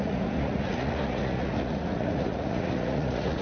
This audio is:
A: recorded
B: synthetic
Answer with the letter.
B